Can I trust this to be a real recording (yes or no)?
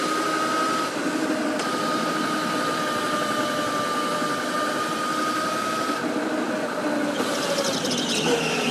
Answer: yes